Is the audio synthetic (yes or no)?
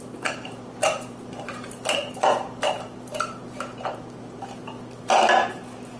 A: yes